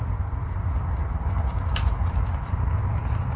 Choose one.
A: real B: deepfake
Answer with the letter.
A